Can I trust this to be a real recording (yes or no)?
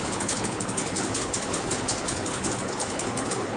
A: no